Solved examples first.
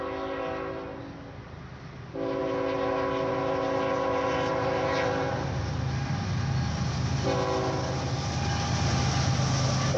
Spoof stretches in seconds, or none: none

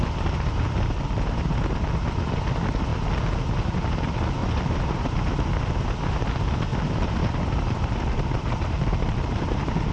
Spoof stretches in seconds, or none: 4.4-5.3; 6.7-9.9

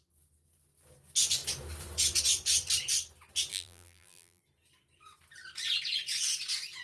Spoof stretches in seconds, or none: 3.5-4.4

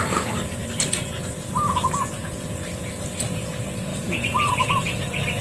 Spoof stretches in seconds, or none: 3.9-4.5

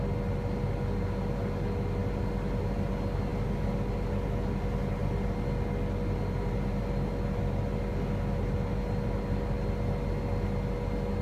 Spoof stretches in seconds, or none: none

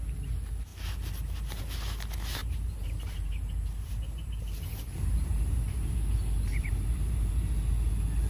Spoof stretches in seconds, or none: 2.4-7.4

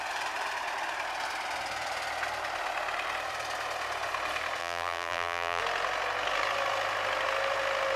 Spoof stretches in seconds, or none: 4.6-5.6